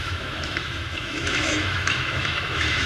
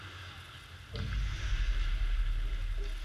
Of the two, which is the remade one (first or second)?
first